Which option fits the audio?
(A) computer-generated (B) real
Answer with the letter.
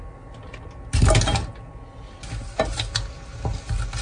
B